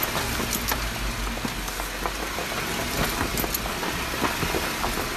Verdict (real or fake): real